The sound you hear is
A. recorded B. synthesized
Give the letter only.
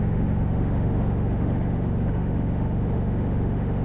B